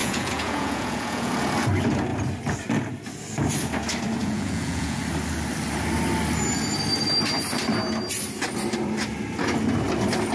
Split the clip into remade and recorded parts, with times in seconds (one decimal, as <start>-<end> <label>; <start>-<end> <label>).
0.0-1.3 remade; 1.3-4.2 recorded; 4.2-5.0 remade; 5.0-10.3 recorded